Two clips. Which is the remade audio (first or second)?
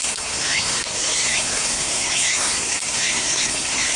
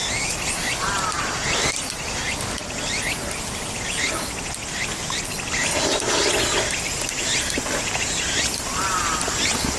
first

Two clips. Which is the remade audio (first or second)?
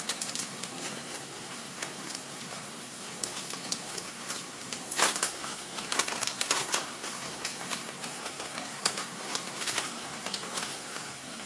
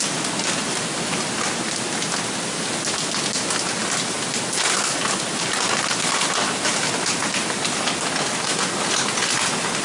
first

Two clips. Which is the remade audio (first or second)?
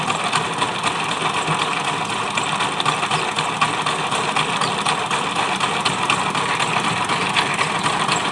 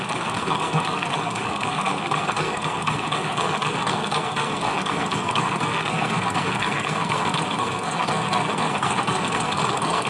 second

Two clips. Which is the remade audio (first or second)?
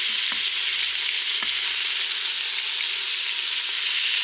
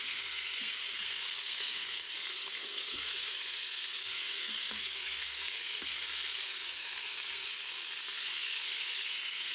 second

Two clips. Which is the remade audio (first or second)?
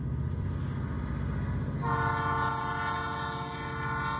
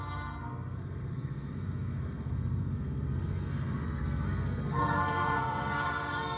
second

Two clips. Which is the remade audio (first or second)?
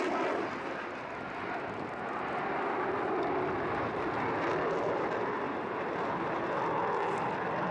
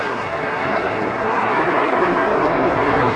second